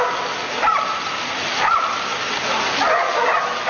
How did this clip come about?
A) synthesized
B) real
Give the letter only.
B